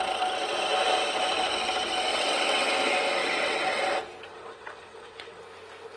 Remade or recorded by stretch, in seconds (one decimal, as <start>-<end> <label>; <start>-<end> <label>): 0.0-2.1 recorded; 2.1-2.7 remade; 2.7-3.2 recorded; 3.2-3.8 remade; 3.8-4.3 recorded; 4.3-5.4 remade; 5.4-6.0 recorded